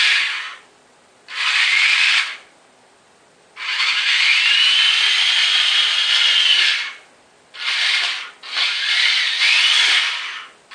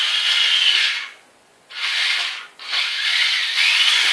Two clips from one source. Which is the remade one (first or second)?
second